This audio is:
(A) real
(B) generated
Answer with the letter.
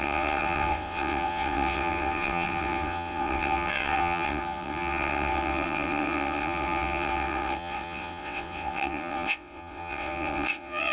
B